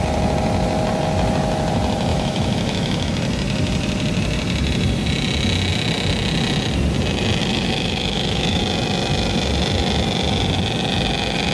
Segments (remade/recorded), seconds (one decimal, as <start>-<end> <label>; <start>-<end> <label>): 0.0-2.1 recorded; 2.1-3.1 remade; 3.1-7.4 recorded; 7.4-8.6 remade; 8.6-11.5 recorded